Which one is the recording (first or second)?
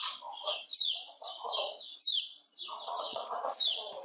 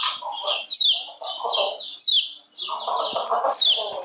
second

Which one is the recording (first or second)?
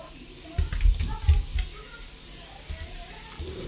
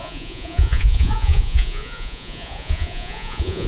first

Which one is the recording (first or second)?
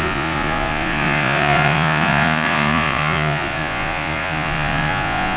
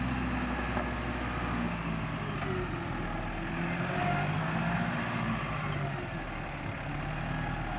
second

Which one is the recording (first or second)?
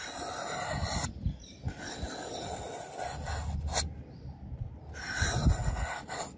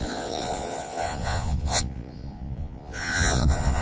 first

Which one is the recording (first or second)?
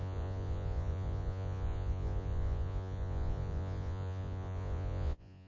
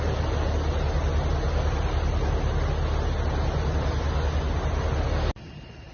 second